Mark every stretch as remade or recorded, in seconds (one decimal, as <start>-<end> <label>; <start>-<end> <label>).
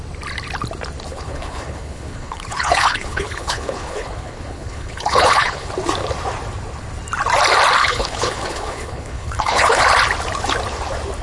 0.0-1.1 recorded; 1.1-5.7 remade; 5.7-7.8 recorded; 7.8-9.8 remade; 9.8-11.2 recorded